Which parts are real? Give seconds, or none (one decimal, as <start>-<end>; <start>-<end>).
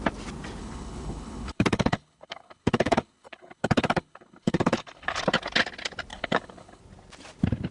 0.0-0.6; 5.2-6.1; 6.8-7.7